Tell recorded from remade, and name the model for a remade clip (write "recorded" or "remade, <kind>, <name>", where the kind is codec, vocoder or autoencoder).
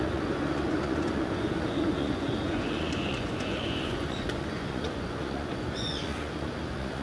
remade, vocoder, Vocos